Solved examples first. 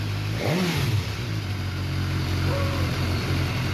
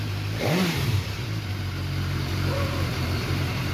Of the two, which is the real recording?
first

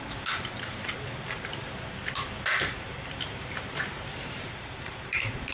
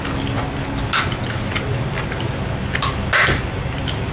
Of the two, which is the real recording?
second